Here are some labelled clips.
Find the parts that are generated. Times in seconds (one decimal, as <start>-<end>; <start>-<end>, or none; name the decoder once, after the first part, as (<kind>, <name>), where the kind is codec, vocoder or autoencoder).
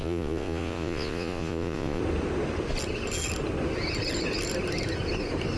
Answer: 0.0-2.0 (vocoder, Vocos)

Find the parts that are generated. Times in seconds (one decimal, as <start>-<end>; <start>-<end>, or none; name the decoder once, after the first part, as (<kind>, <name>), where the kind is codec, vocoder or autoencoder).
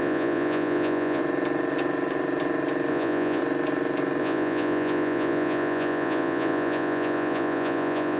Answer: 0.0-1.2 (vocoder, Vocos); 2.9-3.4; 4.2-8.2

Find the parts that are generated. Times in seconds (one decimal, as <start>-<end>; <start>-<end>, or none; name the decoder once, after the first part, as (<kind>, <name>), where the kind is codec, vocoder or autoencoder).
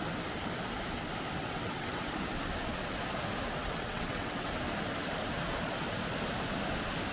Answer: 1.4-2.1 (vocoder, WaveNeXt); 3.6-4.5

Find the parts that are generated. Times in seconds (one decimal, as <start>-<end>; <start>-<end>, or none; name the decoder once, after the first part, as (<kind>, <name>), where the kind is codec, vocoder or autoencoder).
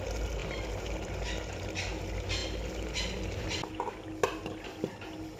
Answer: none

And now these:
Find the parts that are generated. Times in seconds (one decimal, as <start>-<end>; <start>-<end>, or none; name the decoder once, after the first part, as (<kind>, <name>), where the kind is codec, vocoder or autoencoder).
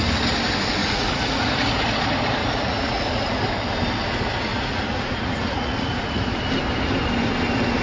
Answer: 0.8-1.5 (vocoder, Vocos); 2.4-3.4; 4.5-6.4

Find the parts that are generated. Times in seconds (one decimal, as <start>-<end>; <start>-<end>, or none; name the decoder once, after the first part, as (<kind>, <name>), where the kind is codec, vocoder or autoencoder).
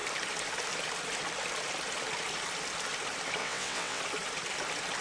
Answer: 3.4-4.0 (vocoder, WaveNeXt)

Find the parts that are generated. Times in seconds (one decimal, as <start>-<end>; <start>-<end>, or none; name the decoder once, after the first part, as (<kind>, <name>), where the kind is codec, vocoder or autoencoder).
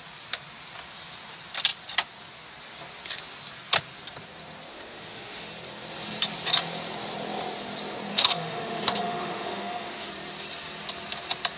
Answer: 4.7-5.5 (autoencoder, DAC-VAE); 8.1-10.1